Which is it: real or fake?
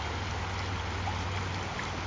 real